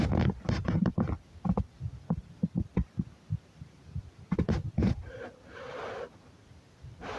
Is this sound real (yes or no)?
yes